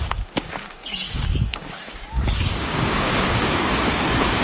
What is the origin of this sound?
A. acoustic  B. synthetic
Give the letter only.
B